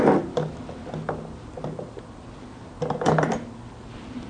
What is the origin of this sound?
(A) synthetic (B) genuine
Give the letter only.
B